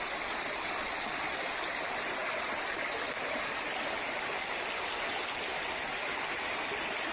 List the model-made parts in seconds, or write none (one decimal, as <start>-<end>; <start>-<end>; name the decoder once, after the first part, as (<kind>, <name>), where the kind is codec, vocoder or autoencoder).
none